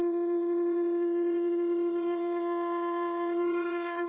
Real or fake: fake